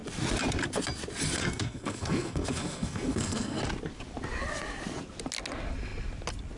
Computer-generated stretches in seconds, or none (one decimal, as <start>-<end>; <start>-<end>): 1.4-3.6